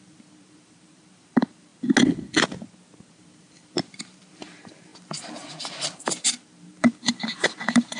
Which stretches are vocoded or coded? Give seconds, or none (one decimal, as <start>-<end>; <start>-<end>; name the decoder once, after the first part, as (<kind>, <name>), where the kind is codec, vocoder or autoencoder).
0.0-1.7 (vocoder, BigVGAN v2); 3.1-8.0